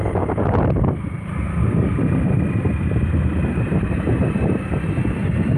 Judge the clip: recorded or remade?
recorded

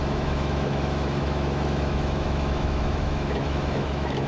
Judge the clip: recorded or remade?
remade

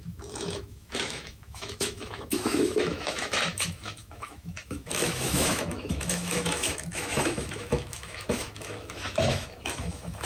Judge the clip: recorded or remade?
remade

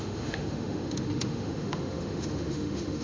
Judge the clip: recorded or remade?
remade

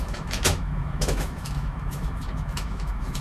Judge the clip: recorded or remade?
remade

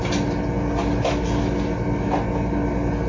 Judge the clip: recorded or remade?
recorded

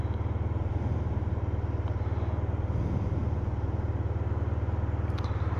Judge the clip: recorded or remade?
recorded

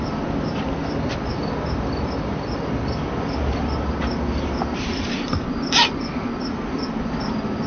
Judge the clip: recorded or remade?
recorded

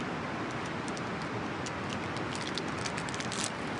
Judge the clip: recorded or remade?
recorded